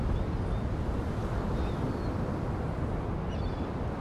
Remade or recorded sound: recorded